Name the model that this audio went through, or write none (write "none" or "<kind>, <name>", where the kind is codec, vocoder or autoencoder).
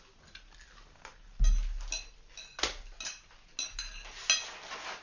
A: none